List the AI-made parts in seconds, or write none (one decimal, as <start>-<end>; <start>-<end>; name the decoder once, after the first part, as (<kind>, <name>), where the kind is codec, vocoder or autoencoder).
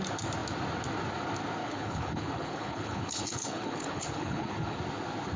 1.6-4.8 (codec, HILCodec)